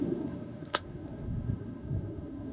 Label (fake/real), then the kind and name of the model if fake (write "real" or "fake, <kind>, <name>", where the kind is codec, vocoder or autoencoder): fake, codec, SNAC